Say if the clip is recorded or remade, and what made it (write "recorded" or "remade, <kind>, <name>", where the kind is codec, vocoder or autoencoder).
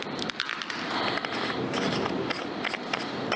recorded